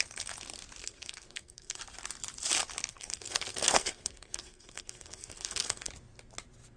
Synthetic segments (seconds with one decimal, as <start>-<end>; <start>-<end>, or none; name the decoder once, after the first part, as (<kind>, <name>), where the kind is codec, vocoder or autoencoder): 0.8-1.8 (codec, SNAC); 2.9-5.9